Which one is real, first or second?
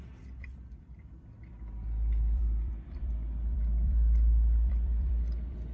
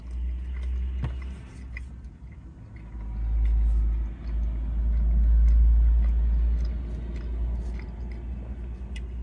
second